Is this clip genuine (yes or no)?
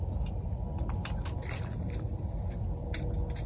yes